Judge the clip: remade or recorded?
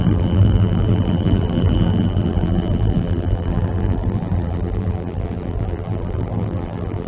remade